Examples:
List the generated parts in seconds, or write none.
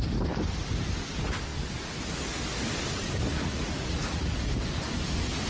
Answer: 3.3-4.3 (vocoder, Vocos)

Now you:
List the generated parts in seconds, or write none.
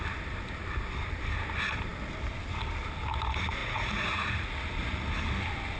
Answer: 3.6-4.5 (vocoder, Vocos)